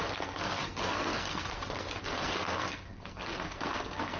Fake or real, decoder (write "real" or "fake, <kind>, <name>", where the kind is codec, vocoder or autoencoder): fake, codec, SNAC